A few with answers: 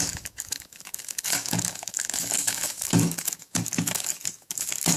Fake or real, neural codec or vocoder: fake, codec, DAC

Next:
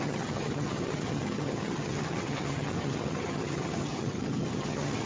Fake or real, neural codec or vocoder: fake, vocoder, HiFi-GAN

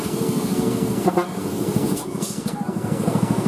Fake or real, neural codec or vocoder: fake, codec, SNAC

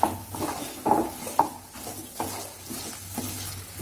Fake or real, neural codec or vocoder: real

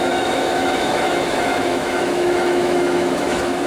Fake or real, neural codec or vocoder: fake, autoencoder, DAC-VAE